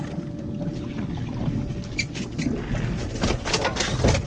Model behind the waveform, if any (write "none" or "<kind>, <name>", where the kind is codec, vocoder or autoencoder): none